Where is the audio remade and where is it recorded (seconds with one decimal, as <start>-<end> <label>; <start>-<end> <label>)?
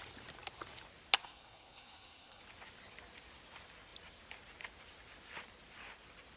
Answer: 0.0-1.2 recorded; 1.2-2.4 remade; 2.4-6.4 recorded